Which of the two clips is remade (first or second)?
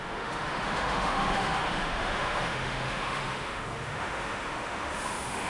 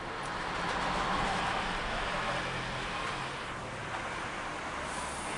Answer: first